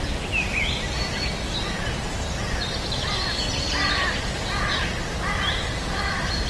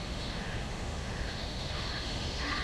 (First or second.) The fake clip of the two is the second